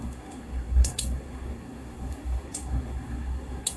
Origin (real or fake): fake